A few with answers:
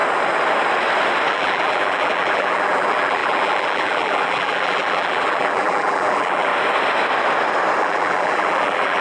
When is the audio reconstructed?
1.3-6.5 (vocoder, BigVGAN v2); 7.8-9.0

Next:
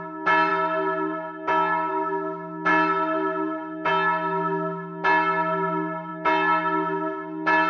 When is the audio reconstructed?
none

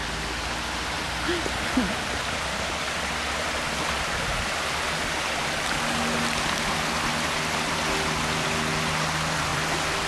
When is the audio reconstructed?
none

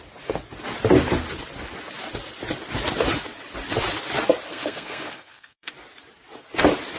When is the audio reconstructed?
4.5-5.7 (codec, SNAC)

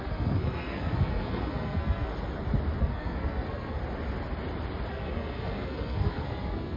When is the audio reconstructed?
0.0-2.1 (codec, SNAC); 2.8-3.8; 4.9-6.8

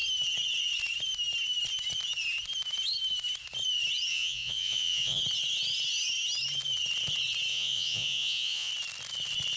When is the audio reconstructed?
4.1-5.2 (vocoder, Vocos); 7.5-8.7

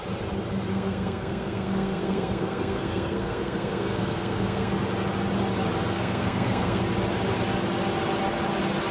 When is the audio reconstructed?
0.7-4.7 (codec, SNAC); 5.9-6.8

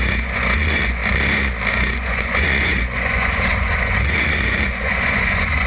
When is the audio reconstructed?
0.0-1.0 (vocoder, Vocos); 1.7-5.7